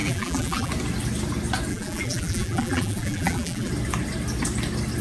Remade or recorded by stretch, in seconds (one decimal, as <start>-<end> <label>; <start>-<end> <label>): 0.0-0.7 remade; 0.7-1.7 recorded; 1.7-3.7 remade; 3.7-5.0 recorded